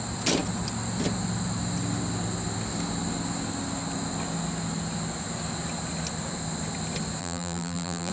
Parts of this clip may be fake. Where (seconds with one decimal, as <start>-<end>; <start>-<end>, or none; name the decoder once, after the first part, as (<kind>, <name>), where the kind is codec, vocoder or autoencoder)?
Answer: 7.2-8.1 (vocoder, BigVGAN v2)